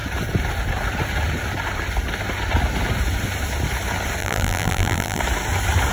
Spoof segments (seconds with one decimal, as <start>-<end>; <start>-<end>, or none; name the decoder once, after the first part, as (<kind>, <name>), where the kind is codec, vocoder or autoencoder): 4.2-5.2 (vocoder, BigVGAN v2)